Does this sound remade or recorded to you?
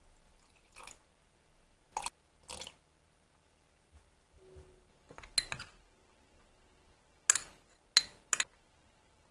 recorded